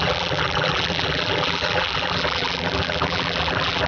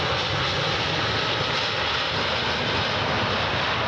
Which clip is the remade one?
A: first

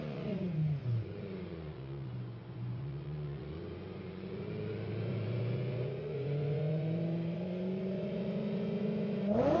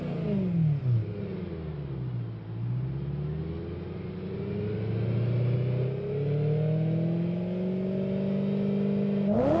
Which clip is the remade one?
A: first